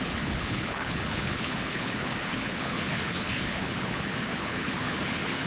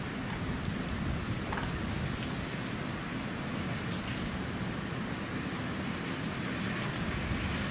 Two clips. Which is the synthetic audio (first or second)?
first